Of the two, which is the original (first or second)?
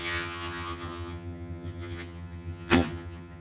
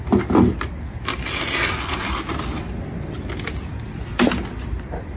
second